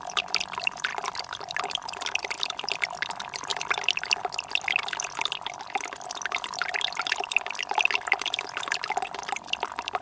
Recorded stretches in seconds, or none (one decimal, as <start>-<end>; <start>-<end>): 0.0-10.0